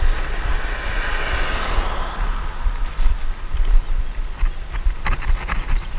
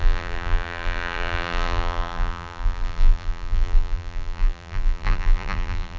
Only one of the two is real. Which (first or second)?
first